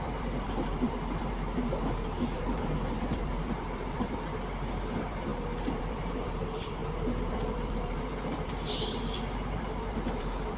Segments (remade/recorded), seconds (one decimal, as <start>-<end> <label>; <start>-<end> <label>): 0.0-6.8 remade; 6.8-7.3 recorded; 7.3-10.6 remade